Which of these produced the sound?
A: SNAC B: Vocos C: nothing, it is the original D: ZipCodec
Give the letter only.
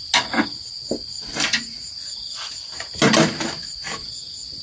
C